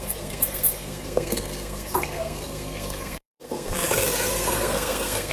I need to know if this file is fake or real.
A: fake